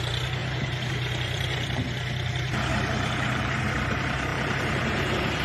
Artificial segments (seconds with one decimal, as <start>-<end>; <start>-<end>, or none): 0.4-1.8; 2.7-3.6; 4.3-5.4